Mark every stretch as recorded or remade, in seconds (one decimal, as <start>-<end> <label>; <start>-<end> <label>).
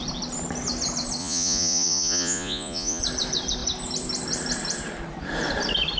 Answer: 0.0-1.2 recorded; 1.2-3.0 remade; 3.0-6.0 recorded